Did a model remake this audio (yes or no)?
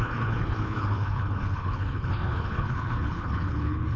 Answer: yes